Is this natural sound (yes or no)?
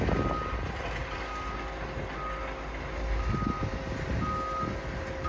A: yes